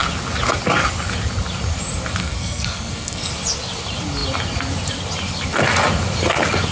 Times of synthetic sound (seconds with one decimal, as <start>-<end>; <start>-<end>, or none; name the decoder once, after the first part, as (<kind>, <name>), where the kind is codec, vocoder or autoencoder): 2.2-3.3 (codec, SNAC)